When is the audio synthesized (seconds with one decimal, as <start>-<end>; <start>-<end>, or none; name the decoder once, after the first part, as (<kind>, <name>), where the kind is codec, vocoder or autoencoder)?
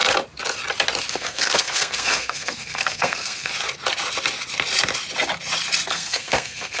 1.1-3.5 (codec, SNAC); 5.9-6.8